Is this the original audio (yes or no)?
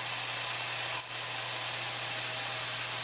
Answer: yes